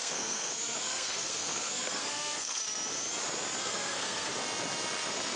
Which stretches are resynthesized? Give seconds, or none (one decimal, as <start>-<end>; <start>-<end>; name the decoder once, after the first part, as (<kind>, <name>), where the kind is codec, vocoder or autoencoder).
0.0-2.6 (codec, SNAC); 3.6-4.3